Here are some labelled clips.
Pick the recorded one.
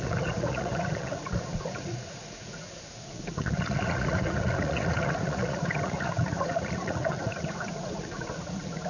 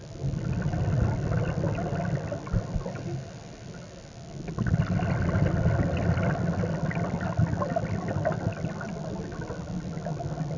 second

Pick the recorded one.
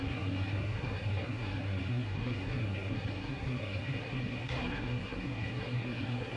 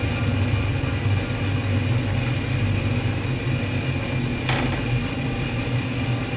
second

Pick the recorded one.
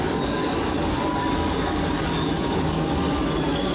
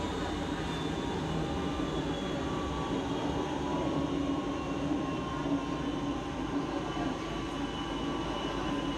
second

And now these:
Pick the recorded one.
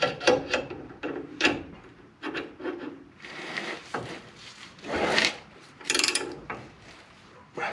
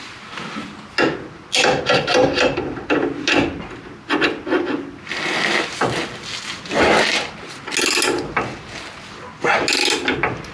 second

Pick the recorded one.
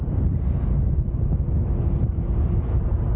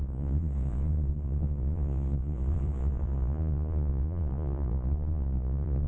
first